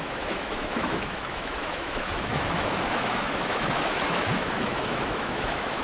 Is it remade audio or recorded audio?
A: remade